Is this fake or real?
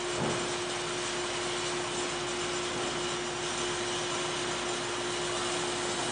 real